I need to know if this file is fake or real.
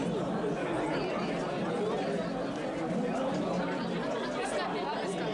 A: real